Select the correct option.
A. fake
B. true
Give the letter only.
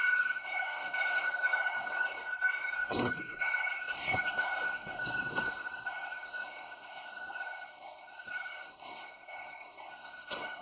A